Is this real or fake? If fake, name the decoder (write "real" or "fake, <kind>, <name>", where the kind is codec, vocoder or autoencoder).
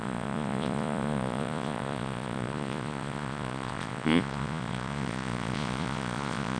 fake, vocoder, Vocos